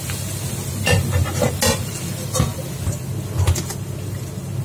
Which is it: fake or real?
real